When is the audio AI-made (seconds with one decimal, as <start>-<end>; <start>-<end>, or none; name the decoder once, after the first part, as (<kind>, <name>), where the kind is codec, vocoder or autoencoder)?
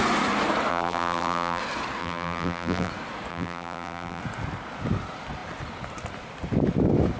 0.7-1.6 (vocoder, BigVGAN v2); 2.0-2.9; 3.3-4.2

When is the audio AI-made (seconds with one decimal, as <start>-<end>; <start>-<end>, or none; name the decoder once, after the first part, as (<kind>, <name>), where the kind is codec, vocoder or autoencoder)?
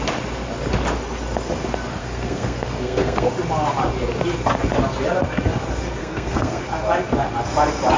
2.0-3.3 (codec, SNAC); 6.0-6.6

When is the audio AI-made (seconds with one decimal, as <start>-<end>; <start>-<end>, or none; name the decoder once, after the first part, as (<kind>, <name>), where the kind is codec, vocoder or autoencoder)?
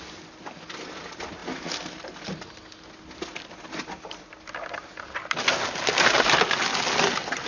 none